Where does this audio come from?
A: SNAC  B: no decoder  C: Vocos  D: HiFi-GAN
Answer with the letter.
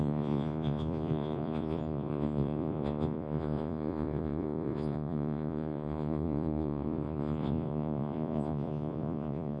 C